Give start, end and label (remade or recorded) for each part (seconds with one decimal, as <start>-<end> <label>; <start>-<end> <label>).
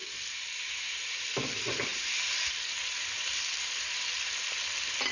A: 0.0-1.9 recorded; 1.9-4.2 remade; 4.2-5.1 recorded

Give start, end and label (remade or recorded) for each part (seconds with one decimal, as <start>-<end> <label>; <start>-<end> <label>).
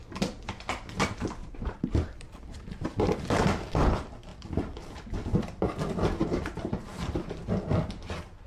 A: 0.0-1.4 recorded; 1.4-3.1 remade; 3.1-4.3 recorded; 4.3-5.9 remade; 5.9-6.6 recorded; 6.6-7.4 remade; 7.4-8.5 recorded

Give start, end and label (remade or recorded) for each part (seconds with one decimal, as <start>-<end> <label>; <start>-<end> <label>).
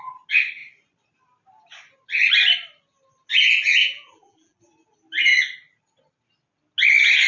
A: 0.0-3.8 recorded; 3.8-4.6 remade; 4.6-7.3 recorded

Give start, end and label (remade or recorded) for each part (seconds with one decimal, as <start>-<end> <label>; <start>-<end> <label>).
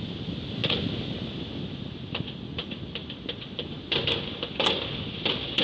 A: 0.0-3.0 recorded; 3.0-3.8 remade; 3.8-5.6 recorded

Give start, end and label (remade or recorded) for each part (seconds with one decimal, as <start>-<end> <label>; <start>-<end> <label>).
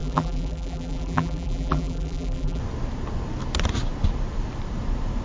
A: 0.0-2.6 remade; 2.6-5.2 recorded